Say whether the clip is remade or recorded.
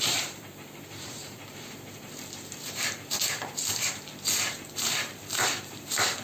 remade